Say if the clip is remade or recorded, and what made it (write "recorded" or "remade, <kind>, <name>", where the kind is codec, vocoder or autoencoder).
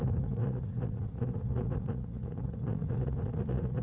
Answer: remade, vocoder, Vocos